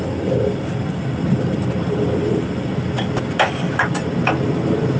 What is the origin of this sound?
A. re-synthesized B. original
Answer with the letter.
B